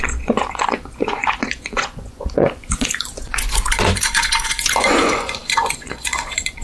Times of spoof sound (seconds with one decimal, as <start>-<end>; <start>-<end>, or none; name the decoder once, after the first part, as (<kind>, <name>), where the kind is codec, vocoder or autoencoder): 0.0-6.6 (vocoder, Vocos)